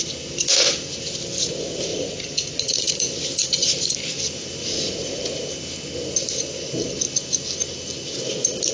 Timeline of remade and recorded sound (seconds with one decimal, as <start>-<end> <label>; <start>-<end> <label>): 0.0-1.9 recorded; 1.9-2.9 remade; 2.9-4.6 recorded; 4.6-5.2 remade; 5.2-8.7 recorded

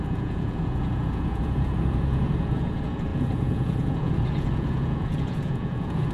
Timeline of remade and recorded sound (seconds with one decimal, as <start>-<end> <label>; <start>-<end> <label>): 0.0-6.1 remade